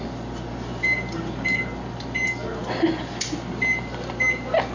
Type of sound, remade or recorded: recorded